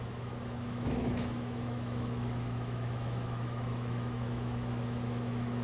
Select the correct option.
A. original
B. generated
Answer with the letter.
B